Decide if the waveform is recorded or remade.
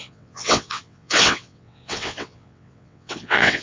remade